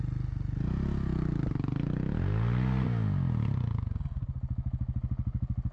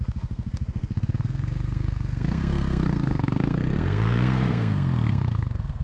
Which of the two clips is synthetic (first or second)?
second